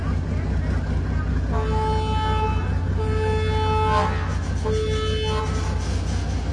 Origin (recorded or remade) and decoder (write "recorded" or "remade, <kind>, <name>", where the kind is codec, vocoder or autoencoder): recorded